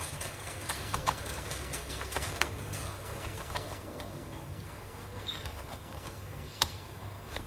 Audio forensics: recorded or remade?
remade